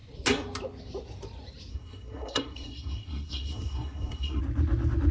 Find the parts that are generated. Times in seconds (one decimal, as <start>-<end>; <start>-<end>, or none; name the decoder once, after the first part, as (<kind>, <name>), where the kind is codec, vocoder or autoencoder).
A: 1.7-4.4 (codec, SNAC)